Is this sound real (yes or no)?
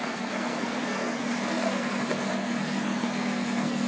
no